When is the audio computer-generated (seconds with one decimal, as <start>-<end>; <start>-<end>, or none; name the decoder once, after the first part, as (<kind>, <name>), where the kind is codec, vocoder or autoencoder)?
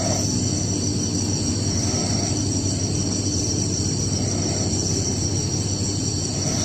2.0-4.9 (vocoder, BigVGAN v2)